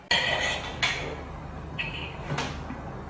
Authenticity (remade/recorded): recorded